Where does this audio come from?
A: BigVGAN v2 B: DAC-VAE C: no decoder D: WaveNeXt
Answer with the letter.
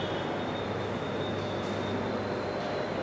C